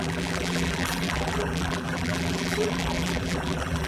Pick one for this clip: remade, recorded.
remade